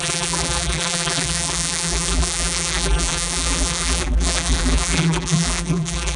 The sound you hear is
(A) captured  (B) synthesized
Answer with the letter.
B